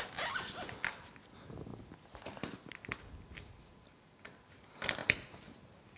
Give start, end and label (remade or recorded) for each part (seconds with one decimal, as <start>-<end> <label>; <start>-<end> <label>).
0.0-6.0 recorded

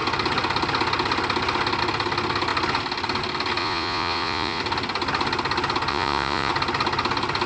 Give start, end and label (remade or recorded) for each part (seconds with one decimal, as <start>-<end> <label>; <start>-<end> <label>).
0.0-3.6 recorded; 3.6-4.6 remade; 4.6-5.9 recorded; 5.9-6.5 remade; 6.5-7.5 recorded

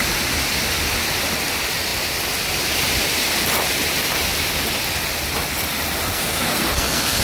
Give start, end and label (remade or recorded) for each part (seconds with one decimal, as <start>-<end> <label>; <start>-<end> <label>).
0.0-6.1 recorded; 6.1-7.2 remade

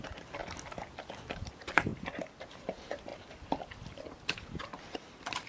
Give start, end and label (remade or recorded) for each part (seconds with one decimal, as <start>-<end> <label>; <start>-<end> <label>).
0.0-0.4 remade; 0.4-1.0 recorded; 1.0-1.9 remade; 1.9-2.4 recorded; 2.4-3.1 remade; 3.1-4.8 recorded; 4.8-5.5 remade

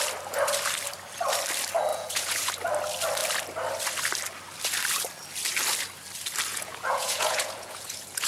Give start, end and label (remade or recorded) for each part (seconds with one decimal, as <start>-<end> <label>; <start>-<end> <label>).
0.0-1.9 recorded; 1.9-2.5 remade; 2.5-6.5 recorded; 6.5-8.3 remade

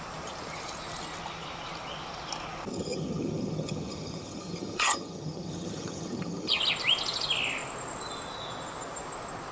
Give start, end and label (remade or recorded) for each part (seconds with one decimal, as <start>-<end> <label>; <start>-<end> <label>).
0.0-2.7 recorded; 2.7-6.6 remade; 6.6-9.5 recorded